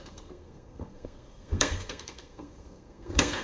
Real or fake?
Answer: fake